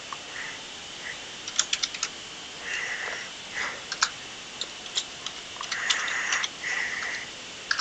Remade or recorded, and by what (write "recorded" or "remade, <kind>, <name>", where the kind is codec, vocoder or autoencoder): recorded